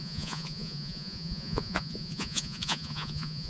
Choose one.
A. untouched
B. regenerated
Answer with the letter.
B